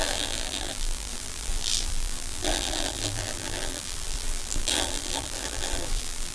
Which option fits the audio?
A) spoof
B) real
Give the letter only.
A